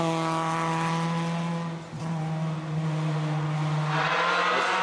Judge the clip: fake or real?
real